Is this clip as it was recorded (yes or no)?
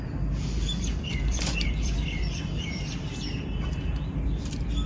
no